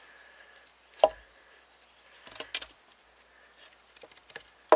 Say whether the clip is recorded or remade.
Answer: recorded